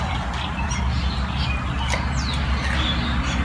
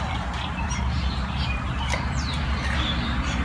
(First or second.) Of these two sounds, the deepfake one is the second